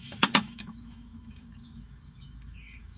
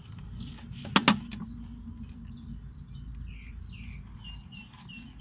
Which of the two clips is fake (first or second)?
first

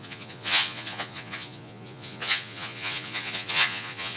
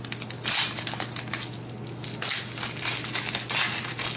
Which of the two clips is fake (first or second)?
first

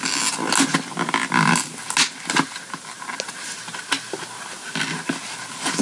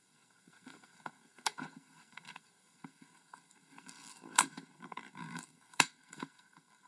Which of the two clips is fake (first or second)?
second